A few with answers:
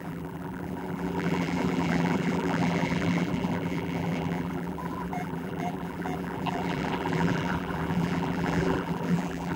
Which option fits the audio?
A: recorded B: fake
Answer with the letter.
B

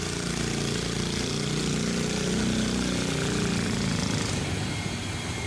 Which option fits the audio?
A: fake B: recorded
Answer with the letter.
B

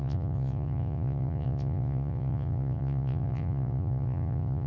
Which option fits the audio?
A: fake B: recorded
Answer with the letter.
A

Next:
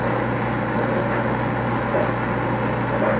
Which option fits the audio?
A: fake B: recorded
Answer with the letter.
B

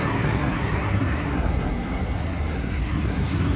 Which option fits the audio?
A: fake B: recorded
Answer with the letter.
A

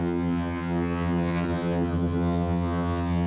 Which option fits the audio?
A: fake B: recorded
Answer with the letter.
A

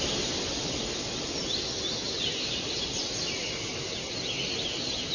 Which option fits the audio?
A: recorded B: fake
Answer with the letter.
A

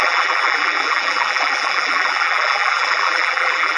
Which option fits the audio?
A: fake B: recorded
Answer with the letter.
A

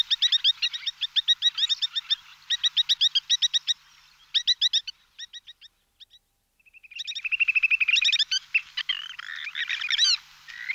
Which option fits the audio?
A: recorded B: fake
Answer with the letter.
A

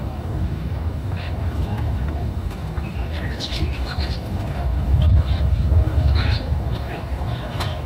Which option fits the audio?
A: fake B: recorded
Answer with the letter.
A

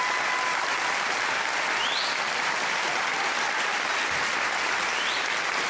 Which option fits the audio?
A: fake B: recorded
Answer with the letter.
B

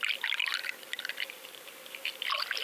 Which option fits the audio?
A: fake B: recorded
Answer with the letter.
B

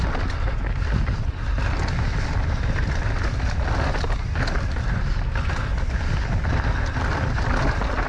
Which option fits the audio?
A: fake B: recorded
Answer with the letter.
B